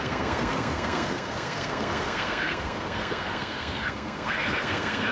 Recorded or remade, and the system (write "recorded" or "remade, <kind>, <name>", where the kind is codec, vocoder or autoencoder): remade, codec, SNAC